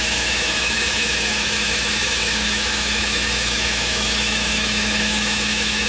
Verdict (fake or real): fake